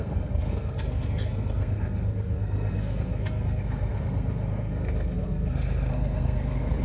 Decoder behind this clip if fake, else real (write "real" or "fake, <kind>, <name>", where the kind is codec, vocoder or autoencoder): fake, codec, SNAC